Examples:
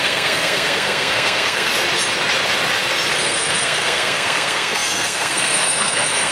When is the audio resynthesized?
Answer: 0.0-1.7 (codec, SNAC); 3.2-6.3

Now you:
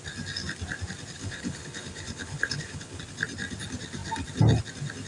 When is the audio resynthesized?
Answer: 1.2-3.0 (codec, HILCodec)

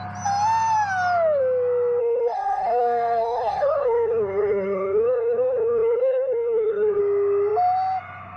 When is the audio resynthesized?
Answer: 2.0-7.0 (codec, SNAC)

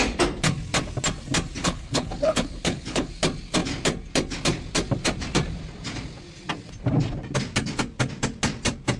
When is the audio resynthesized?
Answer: 1.6-3.1 (codec, HILCodec)